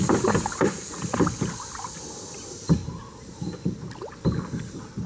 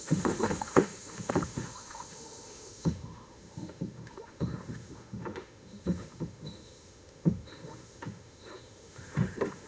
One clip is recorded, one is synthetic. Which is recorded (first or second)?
first